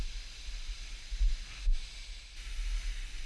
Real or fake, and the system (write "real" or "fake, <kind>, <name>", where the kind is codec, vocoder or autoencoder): real